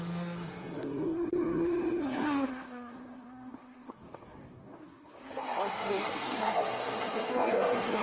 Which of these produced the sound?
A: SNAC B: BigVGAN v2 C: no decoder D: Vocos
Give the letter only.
A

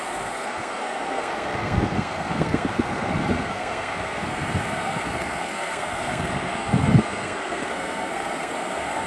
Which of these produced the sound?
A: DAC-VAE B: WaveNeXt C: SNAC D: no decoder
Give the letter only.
C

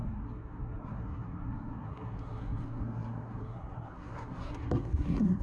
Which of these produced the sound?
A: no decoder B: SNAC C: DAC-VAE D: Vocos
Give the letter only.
B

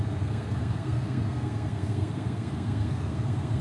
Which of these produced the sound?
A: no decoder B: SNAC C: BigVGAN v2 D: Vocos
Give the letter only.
B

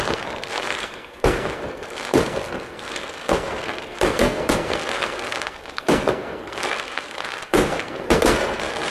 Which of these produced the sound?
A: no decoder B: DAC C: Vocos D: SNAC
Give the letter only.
D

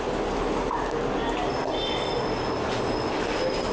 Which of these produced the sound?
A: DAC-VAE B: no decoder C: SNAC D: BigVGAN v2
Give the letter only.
B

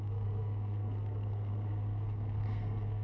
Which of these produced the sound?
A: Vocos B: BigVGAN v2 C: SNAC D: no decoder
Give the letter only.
C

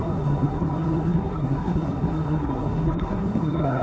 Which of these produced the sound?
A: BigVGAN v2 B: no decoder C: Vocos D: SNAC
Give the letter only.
D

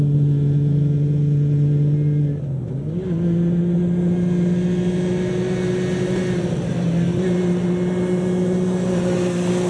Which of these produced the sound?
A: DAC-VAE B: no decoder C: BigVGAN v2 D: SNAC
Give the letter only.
B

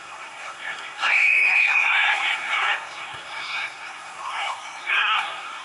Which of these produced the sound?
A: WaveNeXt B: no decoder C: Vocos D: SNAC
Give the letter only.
D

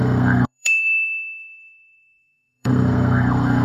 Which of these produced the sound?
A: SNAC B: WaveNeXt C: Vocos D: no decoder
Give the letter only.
A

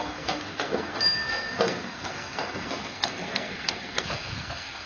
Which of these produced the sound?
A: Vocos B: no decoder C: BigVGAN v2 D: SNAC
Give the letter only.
D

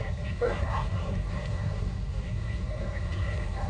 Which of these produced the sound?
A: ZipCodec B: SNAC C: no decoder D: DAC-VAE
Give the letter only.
B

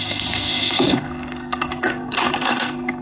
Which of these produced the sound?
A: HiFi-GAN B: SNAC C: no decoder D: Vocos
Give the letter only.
B